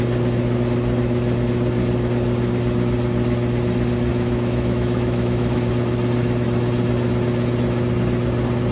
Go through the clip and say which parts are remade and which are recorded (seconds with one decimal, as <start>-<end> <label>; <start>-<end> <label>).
0.0-4.1 recorded; 4.1-5.7 remade; 5.7-8.7 recorded